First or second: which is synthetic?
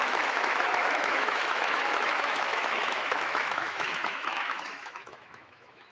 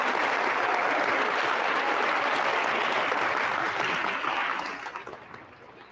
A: first